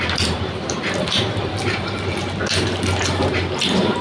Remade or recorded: recorded